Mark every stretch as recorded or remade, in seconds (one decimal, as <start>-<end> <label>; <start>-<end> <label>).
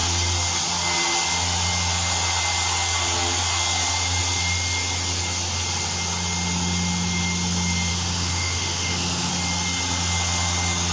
0.0-7.9 recorded; 7.9-9.3 remade; 9.3-10.9 recorded